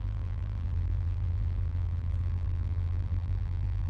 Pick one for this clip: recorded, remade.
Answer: remade